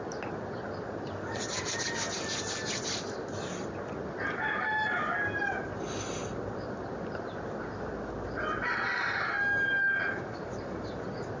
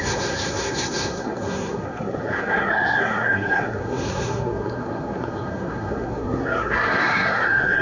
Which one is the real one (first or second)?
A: first